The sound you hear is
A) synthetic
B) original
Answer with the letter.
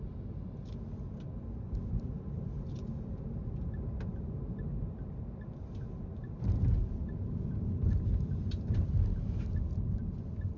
B